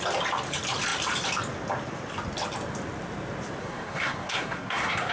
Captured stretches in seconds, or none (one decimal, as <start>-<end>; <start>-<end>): 0.0-3.6

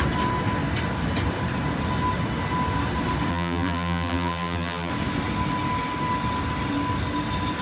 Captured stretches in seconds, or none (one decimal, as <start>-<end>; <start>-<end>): 0.0-3.3; 4.9-7.6

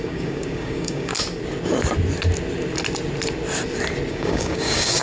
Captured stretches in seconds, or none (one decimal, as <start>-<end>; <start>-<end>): 1.1-4.1

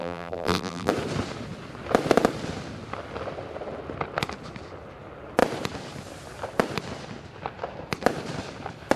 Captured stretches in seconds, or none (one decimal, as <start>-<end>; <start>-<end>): 0.9-9.0

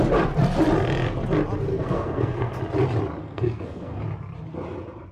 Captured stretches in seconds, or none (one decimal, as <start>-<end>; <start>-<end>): 0.0-1.7; 2.6-3.2; 4.0-5.1